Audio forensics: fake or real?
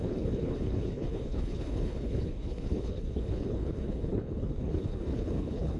fake